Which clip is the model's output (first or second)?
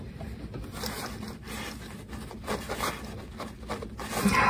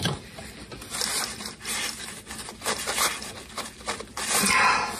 second